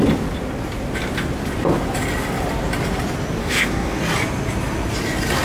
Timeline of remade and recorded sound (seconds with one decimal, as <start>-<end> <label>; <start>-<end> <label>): 0.0-3.4 recorded; 3.4-4.0 remade; 4.0-5.4 recorded